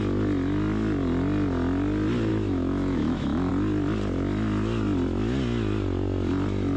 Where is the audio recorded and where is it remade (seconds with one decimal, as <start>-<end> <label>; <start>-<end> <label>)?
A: 0.0-2.3 recorded; 2.3-3.5 remade; 3.5-6.8 recorded